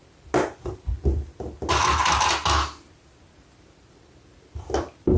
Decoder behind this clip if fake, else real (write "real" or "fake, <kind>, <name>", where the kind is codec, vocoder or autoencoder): real